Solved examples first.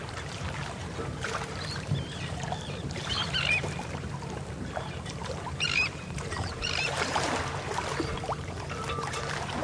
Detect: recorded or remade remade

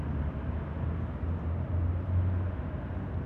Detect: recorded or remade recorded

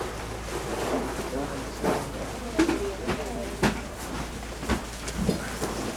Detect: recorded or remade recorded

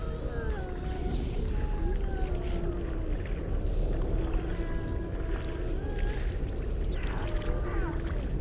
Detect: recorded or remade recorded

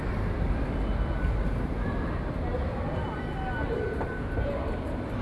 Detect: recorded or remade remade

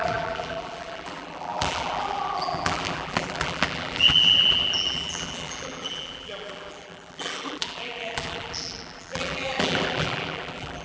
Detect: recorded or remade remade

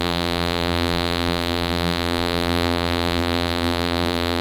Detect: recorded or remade remade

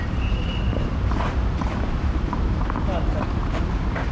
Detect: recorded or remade remade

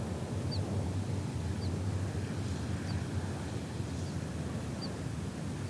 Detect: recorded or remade recorded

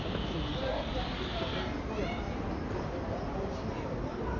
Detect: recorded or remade recorded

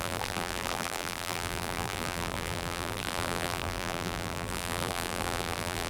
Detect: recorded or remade remade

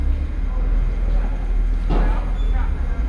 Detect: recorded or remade recorded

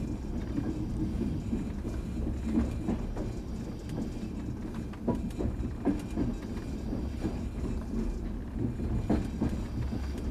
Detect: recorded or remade recorded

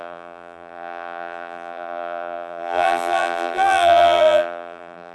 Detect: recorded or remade remade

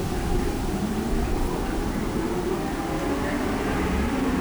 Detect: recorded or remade remade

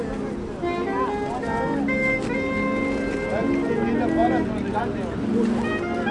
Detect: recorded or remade recorded